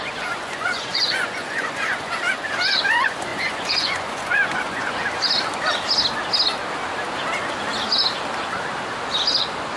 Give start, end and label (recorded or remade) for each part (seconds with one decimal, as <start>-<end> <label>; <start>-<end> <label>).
0.0-5.0 remade; 5.0-9.4 recorded; 9.4-9.8 remade